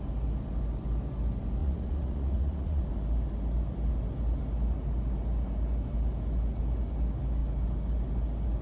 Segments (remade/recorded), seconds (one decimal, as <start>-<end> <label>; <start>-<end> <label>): 0.0-1.6 recorded; 1.6-2.8 remade; 2.8-8.6 recorded